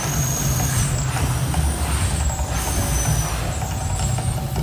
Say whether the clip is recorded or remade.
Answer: recorded